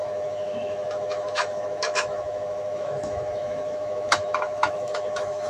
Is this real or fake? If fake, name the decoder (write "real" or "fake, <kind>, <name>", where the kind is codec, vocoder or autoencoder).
fake, autoencoder, DAC-VAE